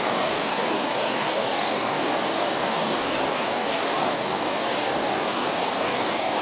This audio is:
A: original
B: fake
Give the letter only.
B